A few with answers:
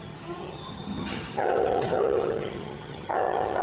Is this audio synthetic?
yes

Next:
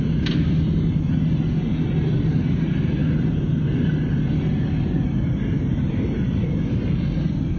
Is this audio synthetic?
no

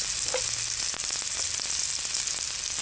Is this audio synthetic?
no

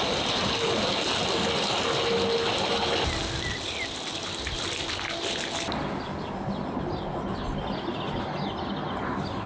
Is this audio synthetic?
no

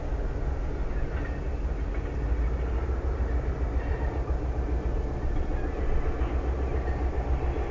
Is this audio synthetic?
no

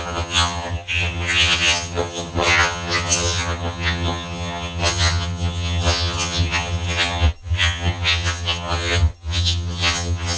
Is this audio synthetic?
yes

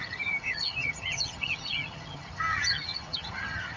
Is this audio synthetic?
yes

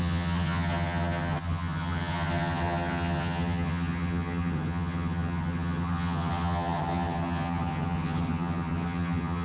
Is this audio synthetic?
yes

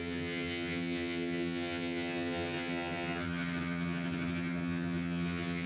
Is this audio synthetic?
yes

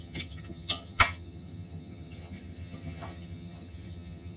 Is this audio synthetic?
yes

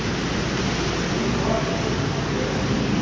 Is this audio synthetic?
no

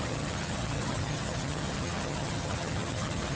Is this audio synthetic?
yes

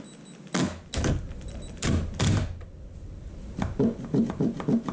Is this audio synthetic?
no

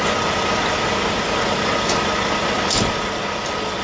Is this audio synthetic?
no